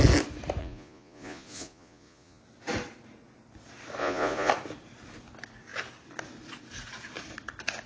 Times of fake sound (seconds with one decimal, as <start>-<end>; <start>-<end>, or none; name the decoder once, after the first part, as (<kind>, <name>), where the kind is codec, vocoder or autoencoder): 0.6-2.4 (vocoder, Vocos); 4.0-4.5